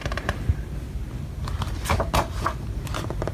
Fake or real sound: real